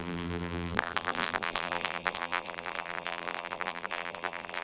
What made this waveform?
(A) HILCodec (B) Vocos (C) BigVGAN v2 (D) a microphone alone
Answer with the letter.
C